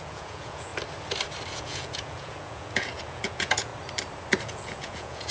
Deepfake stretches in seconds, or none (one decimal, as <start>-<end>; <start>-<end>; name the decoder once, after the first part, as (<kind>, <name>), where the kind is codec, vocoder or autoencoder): 0.0-0.7 (vocoder, Vocos); 1.5-3.7; 4.4-5.3